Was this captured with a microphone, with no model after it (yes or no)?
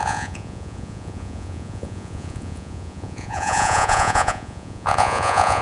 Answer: no